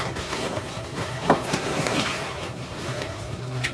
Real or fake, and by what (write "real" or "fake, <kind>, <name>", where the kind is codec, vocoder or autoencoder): fake, codec, SNAC